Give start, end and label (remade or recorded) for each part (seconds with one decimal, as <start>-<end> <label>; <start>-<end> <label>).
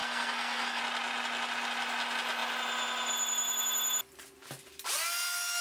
0.0-0.8 remade; 0.8-5.6 recorded